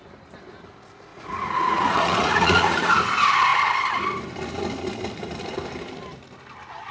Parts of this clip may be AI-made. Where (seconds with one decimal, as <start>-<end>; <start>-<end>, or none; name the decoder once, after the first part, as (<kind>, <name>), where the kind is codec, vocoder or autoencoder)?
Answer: 1.1-2.9 (vocoder, Vocos)